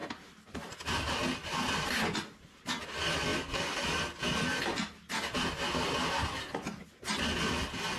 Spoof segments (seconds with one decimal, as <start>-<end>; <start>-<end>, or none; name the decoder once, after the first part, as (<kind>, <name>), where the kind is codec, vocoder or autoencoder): none